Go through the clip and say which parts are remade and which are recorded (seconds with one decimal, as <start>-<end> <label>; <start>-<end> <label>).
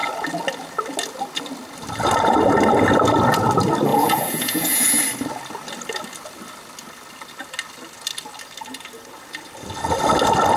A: 0.0-3.9 recorded; 3.9-5.0 remade; 5.0-10.6 recorded